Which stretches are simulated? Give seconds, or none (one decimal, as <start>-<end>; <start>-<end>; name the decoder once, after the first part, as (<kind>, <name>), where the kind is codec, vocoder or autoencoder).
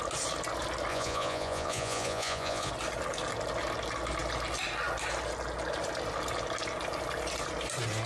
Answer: 0.9-2.7 (vocoder, Vocos)